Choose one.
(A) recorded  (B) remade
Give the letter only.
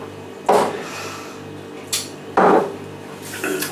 A